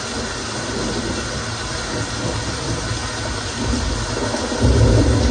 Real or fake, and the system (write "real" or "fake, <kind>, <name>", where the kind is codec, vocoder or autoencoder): real